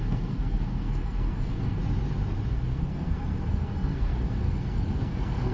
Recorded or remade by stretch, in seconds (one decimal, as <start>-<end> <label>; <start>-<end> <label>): 0.0-1.8 remade; 1.8-2.5 recorded; 2.5-5.5 remade